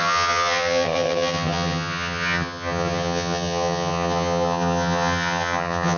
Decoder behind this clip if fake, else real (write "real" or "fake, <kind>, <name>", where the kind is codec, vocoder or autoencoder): fake, vocoder, HiFi-GAN